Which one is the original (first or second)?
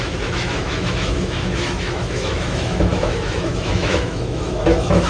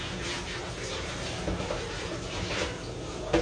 second